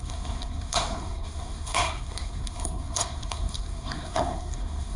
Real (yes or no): no